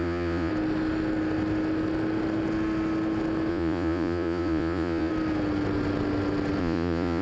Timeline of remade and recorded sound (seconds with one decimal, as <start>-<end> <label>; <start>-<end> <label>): 0.0-0.5 remade; 0.5-3.5 recorded; 3.5-5.1 remade; 5.1-6.6 recorded; 6.6-7.2 remade